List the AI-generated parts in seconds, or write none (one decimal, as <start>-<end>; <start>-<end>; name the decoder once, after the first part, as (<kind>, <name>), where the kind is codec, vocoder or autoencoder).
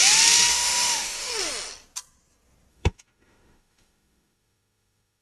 0.5-1.3 (autoencoder, DAC-VAE); 2.7-5.2